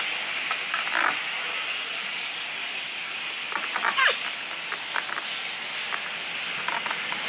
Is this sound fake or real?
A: real